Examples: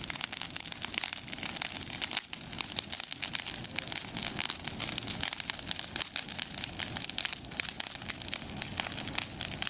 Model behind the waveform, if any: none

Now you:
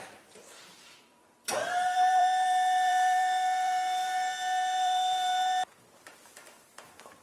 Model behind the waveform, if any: vocoder, BigVGAN v2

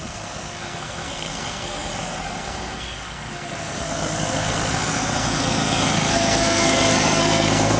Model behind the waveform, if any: codec, SNAC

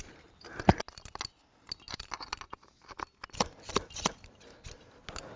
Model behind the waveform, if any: none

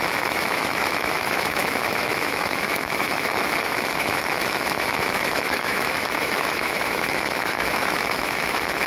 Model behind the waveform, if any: autoencoder, DAC-VAE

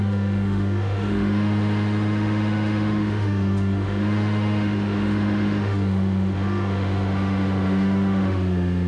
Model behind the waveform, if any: autoencoder, DAC-VAE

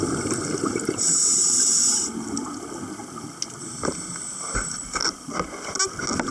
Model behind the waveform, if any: none